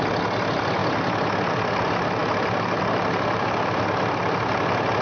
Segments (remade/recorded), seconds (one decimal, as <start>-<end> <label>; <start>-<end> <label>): 0.0-5.0 recorded

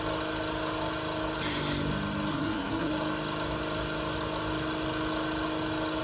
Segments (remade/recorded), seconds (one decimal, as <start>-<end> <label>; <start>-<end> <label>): 0.0-2.3 recorded; 2.3-2.9 remade; 2.9-6.0 recorded

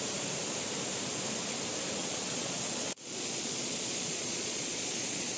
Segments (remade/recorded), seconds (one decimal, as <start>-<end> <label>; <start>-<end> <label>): 0.0-2.0 recorded; 2.0-5.4 remade

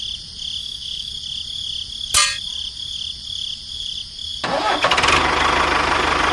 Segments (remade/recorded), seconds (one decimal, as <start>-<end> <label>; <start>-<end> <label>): 0.0-0.6 recorded; 0.6-1.1 remade; 1.1-6.3 recorded

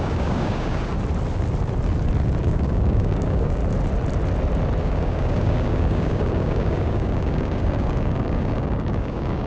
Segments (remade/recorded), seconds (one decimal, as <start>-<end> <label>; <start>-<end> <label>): 0.0-0.9 remade; 0.9-2.4 recorded; 2.4-3.6 remade; 3.6-4.8 recorded; 4.8-9.5 remade